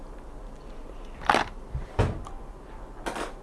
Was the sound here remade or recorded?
remade